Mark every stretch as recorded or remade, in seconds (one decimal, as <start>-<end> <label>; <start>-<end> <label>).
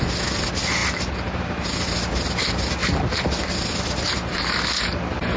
0.0-5.4 recorded